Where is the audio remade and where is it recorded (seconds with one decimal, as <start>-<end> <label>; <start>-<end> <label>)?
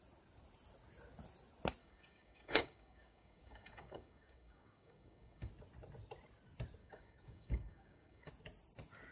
0.0-1.8 recorded; 1.8-5.5 remade; 5.5-6.8 recorded; 6.8-8.3 remade; 8.3-9.1 recorded